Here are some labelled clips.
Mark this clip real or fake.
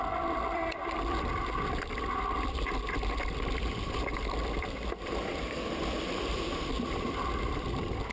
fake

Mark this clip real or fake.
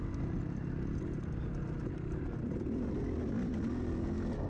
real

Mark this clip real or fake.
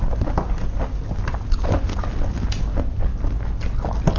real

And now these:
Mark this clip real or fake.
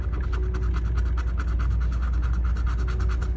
real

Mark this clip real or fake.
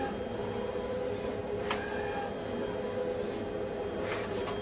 real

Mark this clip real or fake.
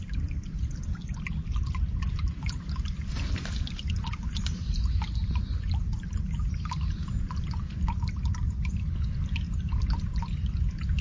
real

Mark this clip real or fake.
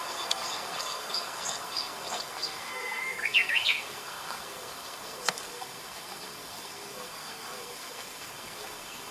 fake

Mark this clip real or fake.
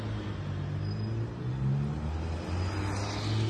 real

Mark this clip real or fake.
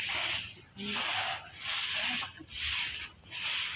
real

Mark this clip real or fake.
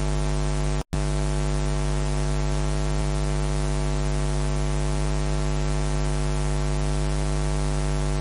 real